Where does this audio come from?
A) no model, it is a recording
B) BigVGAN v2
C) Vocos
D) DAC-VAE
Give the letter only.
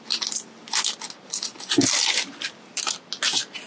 A